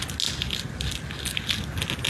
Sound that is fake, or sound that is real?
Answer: real